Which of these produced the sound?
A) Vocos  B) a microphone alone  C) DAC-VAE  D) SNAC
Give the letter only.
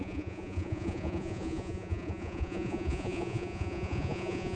A